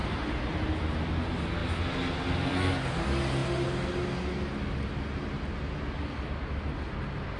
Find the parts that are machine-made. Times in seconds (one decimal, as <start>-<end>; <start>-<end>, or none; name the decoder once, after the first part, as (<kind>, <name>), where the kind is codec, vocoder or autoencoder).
none